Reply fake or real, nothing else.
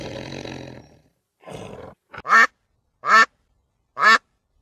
real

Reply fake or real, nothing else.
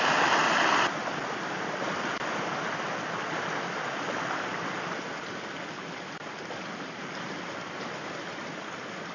real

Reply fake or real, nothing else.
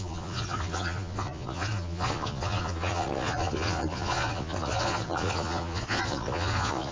fake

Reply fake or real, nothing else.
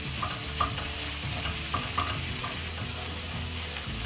real